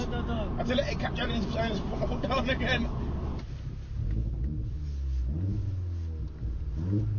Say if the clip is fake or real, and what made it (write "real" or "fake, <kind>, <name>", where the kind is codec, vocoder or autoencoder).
real